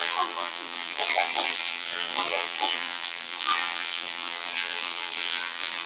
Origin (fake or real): fake